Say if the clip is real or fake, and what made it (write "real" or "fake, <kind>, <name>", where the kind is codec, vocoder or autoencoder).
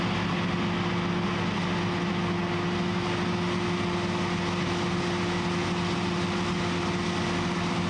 real